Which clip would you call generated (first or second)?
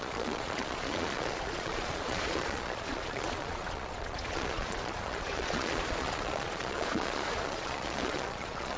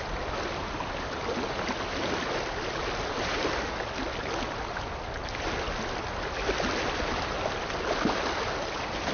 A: first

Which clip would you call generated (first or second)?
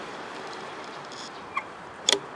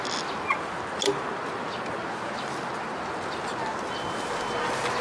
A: first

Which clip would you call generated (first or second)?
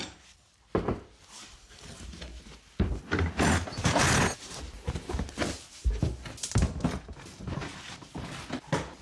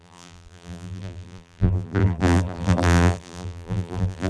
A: second